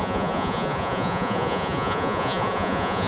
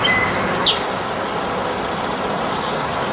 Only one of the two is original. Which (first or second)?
second